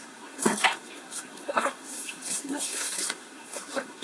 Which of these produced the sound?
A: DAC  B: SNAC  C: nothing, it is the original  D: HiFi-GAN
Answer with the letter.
B